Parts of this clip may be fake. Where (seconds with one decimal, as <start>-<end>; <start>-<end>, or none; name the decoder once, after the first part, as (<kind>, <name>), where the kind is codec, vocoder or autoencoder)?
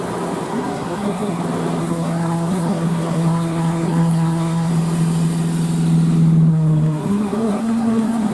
0.5-1.4 (codec, SNAC); 1.8-4.7; 6.5-8.3